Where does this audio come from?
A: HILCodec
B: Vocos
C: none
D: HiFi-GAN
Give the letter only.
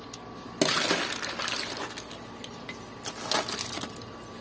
C